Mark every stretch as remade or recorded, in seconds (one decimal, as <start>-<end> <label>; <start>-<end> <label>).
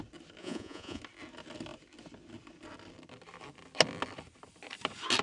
0.0-0.4 recorded; 0.4-1.0 remade; 1.0-5.2 recorded